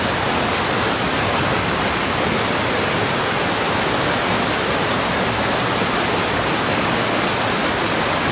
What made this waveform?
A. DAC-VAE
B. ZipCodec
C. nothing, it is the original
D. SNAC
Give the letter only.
C